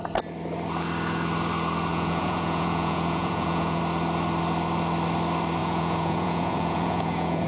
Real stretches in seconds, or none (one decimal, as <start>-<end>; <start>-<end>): 0.0-1.9; 3.8-5.6